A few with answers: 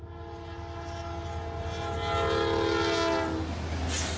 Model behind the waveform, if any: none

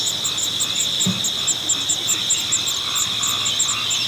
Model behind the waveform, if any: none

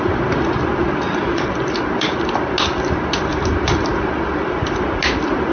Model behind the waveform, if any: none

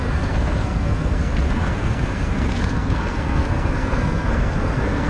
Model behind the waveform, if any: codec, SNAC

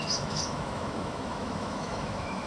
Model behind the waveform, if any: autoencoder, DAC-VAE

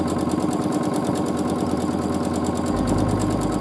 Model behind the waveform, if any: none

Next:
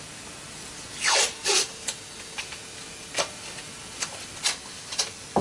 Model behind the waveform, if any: none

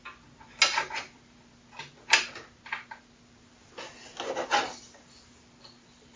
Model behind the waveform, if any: none